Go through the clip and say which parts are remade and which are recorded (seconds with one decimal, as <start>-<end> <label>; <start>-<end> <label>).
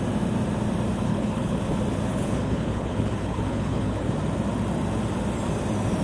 0.0-1.1 recorded; 1.1-1.6 remade; 1.6-2.1 recorded; 2.1-4.1 remade; 4.1-6.0 recorded